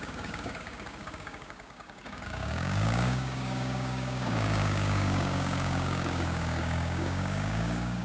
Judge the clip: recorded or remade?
remade